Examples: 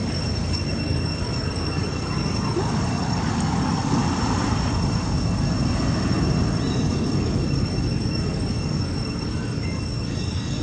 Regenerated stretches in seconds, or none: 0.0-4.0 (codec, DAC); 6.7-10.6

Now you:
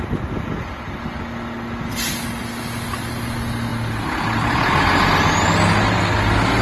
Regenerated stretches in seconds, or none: none

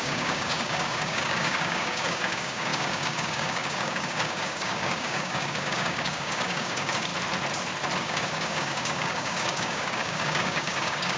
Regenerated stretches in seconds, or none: 0.0-7.1 (codec, DAC); 8.0-11.2